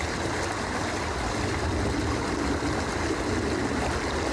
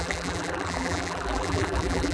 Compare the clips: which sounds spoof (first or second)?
second